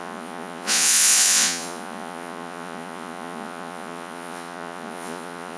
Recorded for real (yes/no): no